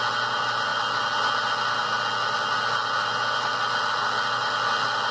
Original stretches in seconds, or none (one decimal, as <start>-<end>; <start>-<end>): 0.0-5.1